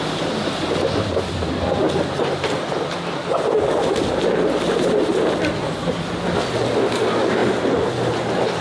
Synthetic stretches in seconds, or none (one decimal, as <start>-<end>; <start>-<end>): none